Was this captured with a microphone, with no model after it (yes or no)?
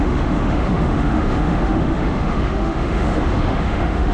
no